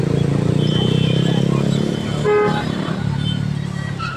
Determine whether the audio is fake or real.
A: real